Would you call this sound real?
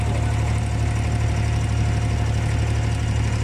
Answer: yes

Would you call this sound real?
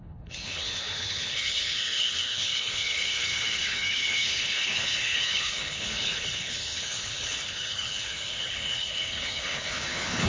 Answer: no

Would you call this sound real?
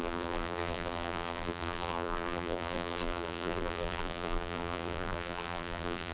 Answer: no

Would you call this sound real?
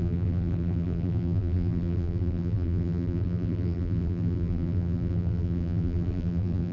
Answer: no